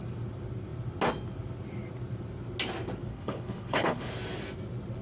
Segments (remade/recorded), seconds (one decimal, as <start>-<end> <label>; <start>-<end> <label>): 0.0-3.1 recorded; 3.1-4.1 remade; 4.1-5.0 recorded